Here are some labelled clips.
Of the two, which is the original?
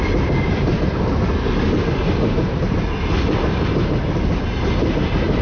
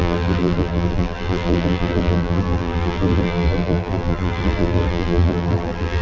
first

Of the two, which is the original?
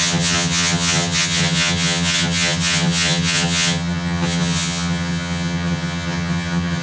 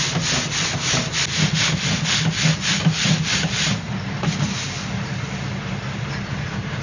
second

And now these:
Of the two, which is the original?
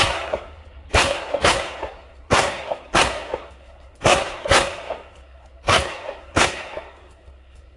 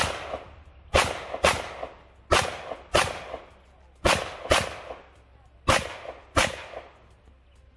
second